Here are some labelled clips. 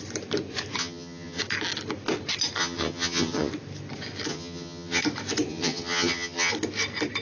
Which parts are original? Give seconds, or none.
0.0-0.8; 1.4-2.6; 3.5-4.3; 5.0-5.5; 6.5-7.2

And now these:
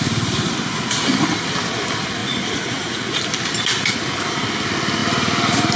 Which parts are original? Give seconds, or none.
0.0-2.2; 3.2-5.8

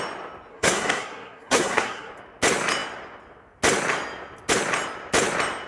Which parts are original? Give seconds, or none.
0.0-0.5; 2.1-5.7

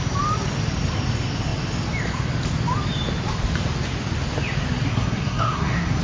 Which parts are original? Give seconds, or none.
0.0-4.9

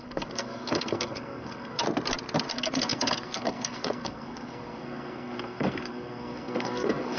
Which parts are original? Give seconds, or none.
1.8-2.5

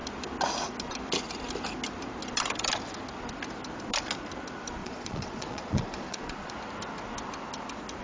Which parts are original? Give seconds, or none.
0.0-4.8; 6.5-8.0

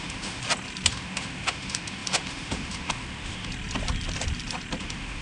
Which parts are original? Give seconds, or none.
0.4-0.9; 3.5-4.8